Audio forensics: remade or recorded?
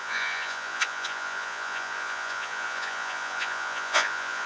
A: remade